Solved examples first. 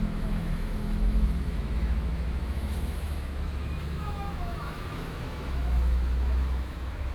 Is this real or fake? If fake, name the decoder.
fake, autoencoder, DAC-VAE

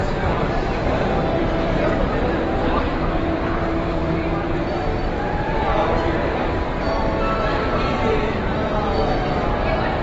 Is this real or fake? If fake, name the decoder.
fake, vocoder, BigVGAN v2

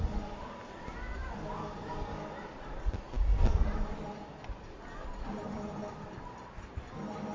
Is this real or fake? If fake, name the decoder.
real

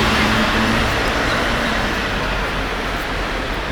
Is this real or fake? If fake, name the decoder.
fake, vocoder, BigVGAN v2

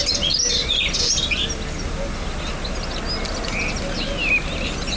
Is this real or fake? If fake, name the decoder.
real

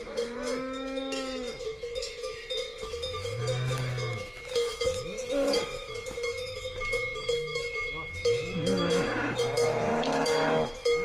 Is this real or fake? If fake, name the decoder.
fake, autoencoder, DAC-VAE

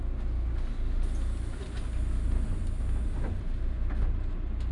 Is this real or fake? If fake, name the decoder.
real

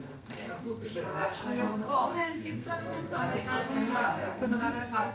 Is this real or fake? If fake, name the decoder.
fake, codec, SNAC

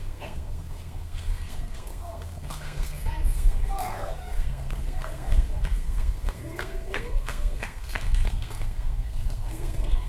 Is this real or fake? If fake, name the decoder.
fake, codec, SNAC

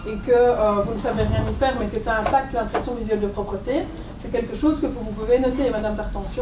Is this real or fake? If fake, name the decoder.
real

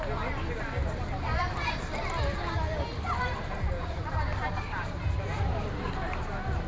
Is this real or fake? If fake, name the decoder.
real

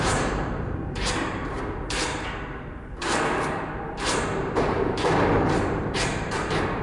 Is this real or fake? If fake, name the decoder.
fake, vocoder, BigVGAN v2